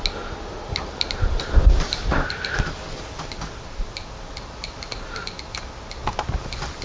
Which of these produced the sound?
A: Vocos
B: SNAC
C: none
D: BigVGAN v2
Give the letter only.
C